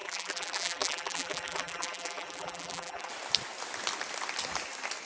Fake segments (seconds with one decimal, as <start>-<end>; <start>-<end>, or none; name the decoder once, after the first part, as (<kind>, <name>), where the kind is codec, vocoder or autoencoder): 0.0-3.1 (vocoder, BigVGAN v2)